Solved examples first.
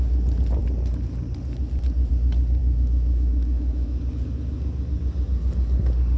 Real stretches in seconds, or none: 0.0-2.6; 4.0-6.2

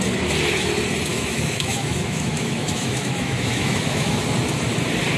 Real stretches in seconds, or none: 0.0-1.1; 4.2-5.2

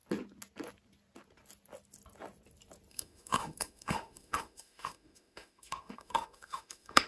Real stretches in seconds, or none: 0.0-2.9

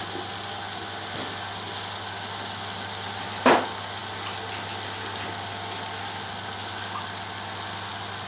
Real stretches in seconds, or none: 0.0-8.3

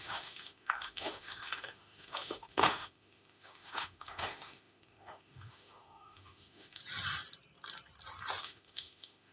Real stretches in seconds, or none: 6.8-8.4

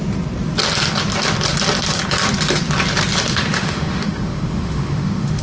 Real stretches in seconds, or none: 0.0-3.3

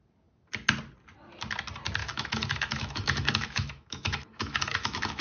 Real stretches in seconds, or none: 0.0-2.0

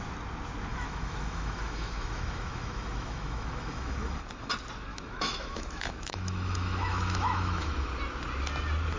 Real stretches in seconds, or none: 0.0-0.7; 4.5-4.9; 7.9-9.0